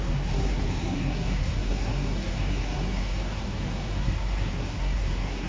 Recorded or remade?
remade